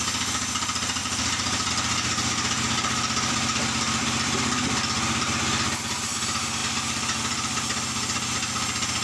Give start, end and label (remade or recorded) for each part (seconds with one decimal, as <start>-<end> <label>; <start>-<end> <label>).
0.0-1.0 recorded; 1.0-1.7 remade; 1.7-9.0 recorded